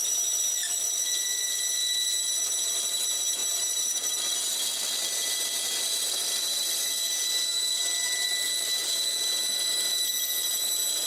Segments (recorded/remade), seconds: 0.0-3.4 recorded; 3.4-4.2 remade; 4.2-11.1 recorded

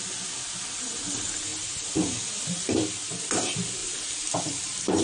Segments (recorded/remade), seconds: 0.0-3.8 recorded; 3.8-5.0 remade

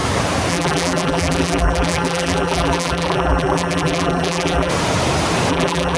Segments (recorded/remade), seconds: 0.0-0.5 recorded; 0.5-4.7 remade; 4.7-5.5 recorded; 5.5-6.0 remade